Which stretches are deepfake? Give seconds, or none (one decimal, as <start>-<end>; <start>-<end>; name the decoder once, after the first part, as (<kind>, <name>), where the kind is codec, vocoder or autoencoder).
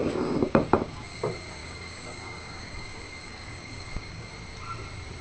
0.0-1.2 (codec, DAC); 1.6-4.3